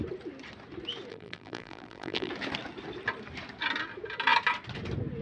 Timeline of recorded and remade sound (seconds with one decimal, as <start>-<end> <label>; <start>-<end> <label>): 0.0-1.1 recorded; 1.1-2.3 remade; 2.3-5.2 recorded